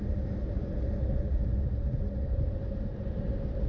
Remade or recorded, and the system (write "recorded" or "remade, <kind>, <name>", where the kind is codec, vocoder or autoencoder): recorded